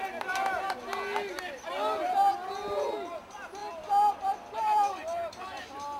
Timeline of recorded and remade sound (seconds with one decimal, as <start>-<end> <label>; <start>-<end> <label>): 0.0-3.6 recorded; 3.6-5.6 remade; 5.6-6.0 recorded